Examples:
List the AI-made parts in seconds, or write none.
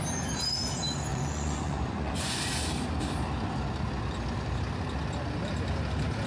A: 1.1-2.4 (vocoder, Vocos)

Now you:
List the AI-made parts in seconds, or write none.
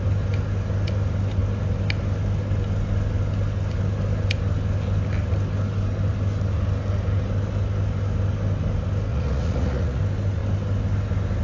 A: 9.1-10.0 (vocoder, Vocos)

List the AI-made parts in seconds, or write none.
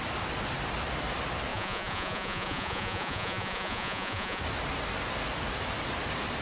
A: 1.5-4.4 (vocoder, Vocos)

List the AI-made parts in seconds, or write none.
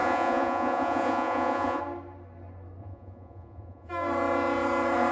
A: 0.0-1.8 (vocoder, Vocos); 2.8-3.9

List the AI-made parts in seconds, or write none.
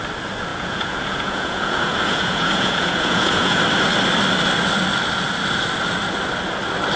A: 0.5-3.6 (vocoder, Vocos)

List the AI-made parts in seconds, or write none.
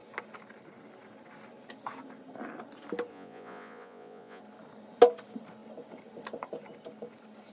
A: 3.1-4.4 (vocoder, Vocos)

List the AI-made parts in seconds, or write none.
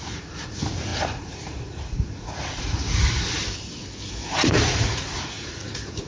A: 0.0-3.4 (vocoder, Vocos); 4.3-6.1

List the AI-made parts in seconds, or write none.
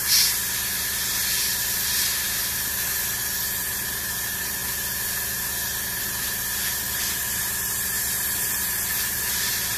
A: none